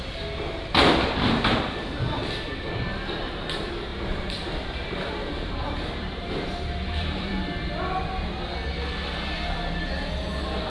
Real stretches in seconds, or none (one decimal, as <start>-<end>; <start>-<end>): 0.0-2.2; 2.7-3.9; 7.3-10.7